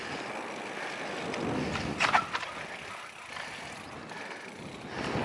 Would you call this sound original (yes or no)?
yes